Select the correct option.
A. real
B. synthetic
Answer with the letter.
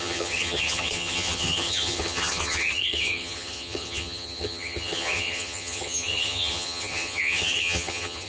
B